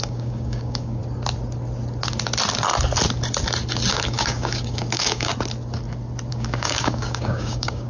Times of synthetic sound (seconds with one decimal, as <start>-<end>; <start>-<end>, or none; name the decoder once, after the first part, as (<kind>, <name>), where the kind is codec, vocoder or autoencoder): 0.0-1.0 (codec, DAC); 3.9-5.3; 6.3-7.9